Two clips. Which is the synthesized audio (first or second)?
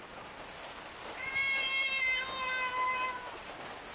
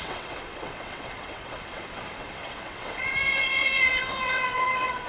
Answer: second